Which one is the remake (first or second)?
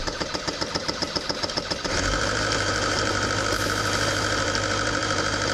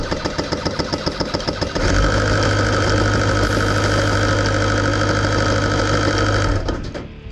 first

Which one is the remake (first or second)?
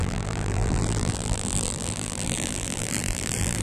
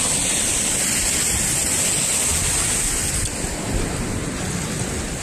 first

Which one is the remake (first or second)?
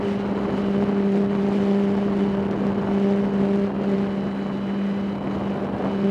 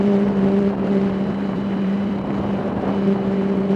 second